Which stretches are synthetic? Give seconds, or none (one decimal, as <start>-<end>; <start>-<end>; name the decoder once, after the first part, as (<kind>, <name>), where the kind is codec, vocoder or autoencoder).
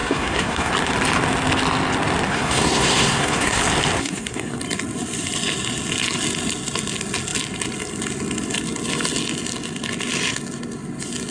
0.0-0.7 (codec, SNAC); 2.3-3.6; 4.0-4.6